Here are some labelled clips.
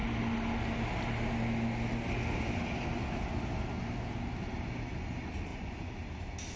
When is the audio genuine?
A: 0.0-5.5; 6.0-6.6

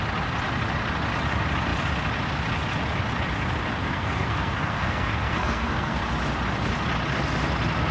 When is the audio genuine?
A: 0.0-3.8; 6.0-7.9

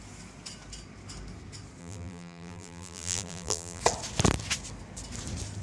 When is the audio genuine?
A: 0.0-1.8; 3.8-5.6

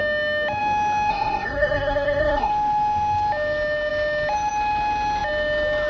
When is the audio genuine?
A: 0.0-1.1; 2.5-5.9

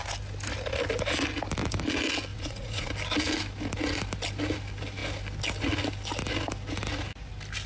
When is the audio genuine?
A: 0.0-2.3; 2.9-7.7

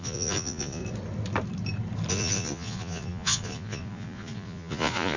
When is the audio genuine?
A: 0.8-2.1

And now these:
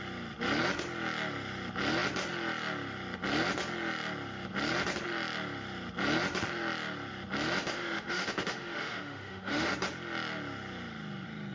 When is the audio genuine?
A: 0.0-7.6; 9.7-11.5

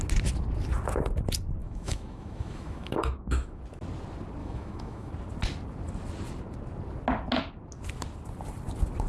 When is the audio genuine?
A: 0.0-1.6; 3.6-4.4; 5.1-9.1